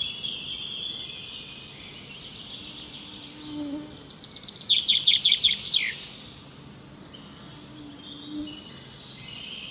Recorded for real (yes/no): yes